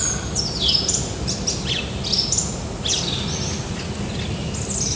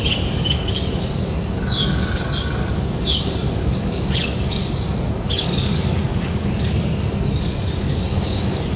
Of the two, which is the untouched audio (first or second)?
first